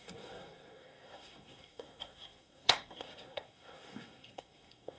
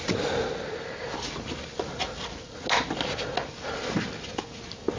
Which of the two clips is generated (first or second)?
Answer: first